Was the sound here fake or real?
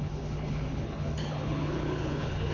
fake